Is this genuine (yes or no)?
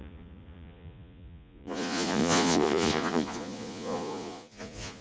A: no